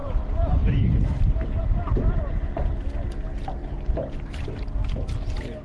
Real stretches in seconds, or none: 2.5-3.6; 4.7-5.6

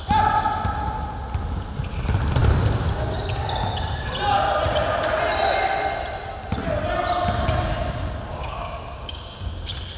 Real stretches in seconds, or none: 0.0-8.3; 9.5-10.0